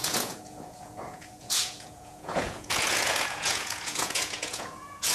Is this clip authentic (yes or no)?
no